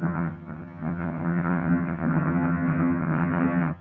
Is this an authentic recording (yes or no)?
no